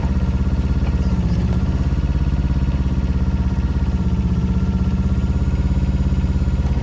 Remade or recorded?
remade